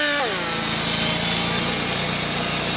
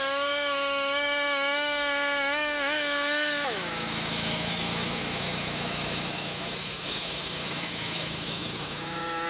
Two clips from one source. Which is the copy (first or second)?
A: second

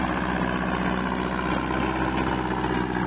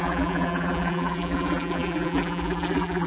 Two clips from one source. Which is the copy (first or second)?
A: second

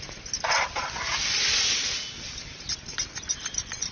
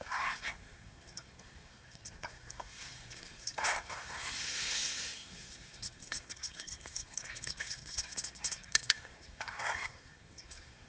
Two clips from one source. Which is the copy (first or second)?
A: second